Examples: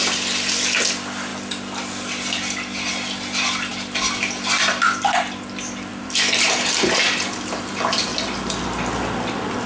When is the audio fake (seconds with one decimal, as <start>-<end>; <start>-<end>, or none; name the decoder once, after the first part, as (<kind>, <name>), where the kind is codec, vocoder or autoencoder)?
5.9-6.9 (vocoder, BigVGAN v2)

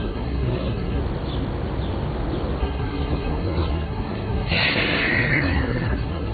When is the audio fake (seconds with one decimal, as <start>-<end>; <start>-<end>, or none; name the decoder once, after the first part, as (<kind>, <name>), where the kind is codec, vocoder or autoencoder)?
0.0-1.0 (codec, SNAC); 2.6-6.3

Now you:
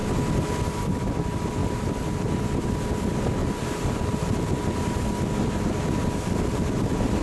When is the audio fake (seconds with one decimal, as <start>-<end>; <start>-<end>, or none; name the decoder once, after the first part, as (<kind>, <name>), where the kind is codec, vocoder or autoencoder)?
1.6-2.3 (vocoder, BigVGAN v2); 3.4-4.6